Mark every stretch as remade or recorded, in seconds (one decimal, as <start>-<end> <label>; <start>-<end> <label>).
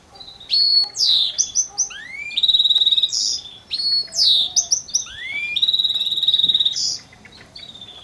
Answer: 0.0-1.6 remade; 1.6-6.4 recorded; 6.4-8.0 remade